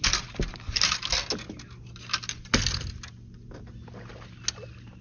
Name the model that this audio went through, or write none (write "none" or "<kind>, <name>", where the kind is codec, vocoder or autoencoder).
none